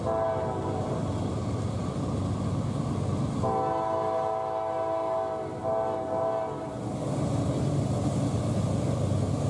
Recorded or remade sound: recorded